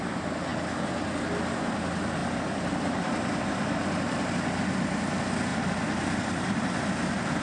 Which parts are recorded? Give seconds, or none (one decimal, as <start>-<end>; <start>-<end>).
0.0-7.4